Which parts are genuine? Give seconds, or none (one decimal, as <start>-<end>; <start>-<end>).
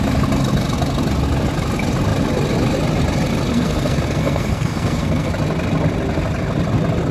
0.0-3.5; 5.3-7.1